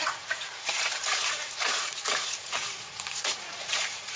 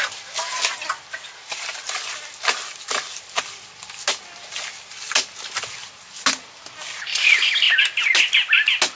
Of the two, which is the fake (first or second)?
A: first